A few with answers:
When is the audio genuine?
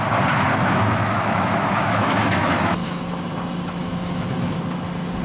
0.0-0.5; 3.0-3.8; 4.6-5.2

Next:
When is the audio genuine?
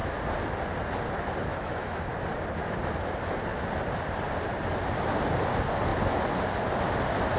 0.0-1.5; 2.2-7.4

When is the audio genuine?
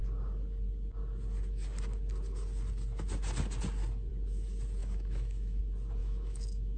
0.0-4.8; 5.6-6.0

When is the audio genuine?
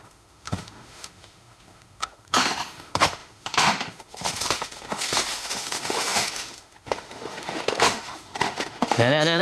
none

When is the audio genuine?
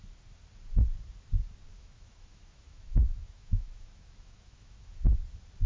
0.0-1.7; 5.0-5.7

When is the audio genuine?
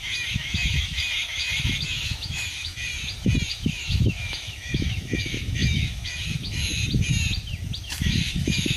2.9-3.5; 6.8-7.8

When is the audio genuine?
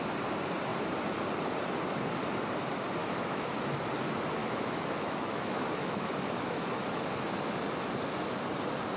0.0-3.0; 3.6-4.4; 7.0-9.0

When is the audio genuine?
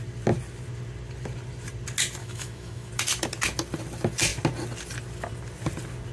0.0-2.2; 2.9-6.1